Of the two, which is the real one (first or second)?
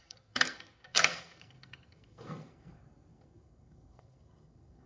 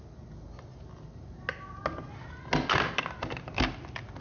second